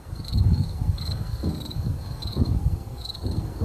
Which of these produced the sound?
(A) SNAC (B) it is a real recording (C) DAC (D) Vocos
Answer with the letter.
A